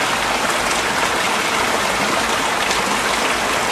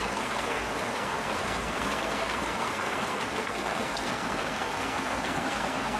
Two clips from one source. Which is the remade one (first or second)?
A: second